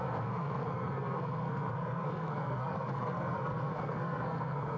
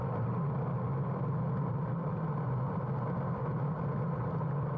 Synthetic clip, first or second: first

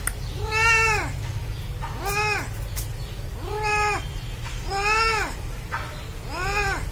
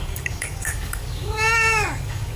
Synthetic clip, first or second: second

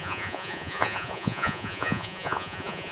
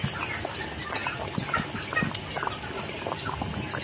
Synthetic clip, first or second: first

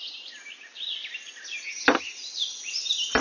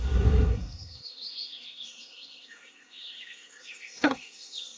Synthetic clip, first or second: second